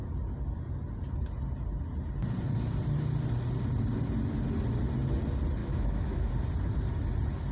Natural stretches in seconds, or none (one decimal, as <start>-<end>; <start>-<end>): 0.0-5.6; 6.3-7.5